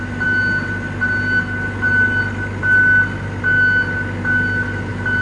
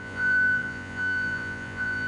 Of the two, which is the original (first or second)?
first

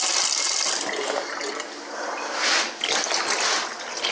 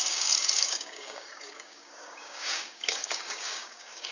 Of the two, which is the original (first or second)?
first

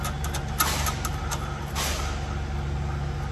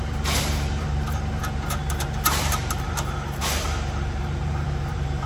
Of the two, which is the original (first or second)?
first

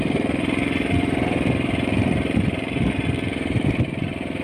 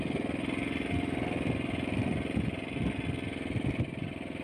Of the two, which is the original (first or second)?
second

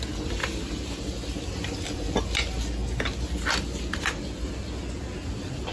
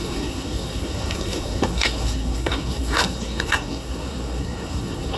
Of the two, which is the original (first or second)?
first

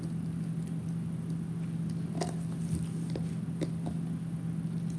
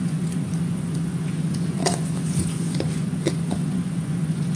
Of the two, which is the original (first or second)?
first